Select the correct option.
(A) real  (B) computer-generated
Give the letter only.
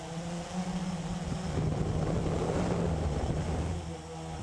A